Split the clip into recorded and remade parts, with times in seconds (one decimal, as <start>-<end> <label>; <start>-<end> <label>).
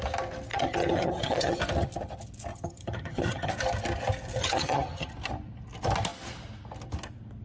0.0-0.5 recorded; 0.5-1.6 remade; 1.6-2.5 recorded; 2.5-3.5 remade; 3.5-4.4 recorded; 4.4-5.1 remade; 5.1-7.4 recorded